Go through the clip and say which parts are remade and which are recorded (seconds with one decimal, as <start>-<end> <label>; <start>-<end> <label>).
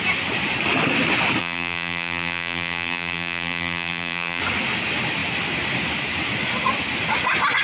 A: 0.0-1.4 recorded; 1.4-4.4 remade; 4.4-7.6 recorded